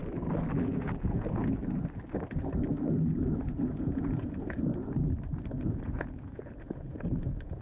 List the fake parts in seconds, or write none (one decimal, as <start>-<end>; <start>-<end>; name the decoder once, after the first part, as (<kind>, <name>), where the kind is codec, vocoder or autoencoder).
0.6-1.6 (vocoder, Vocos); 3.4-4.7; 5.6-7.6